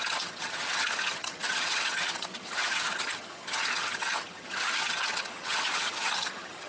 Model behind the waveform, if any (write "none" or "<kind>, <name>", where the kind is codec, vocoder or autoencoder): vocoder, HiFi-GAN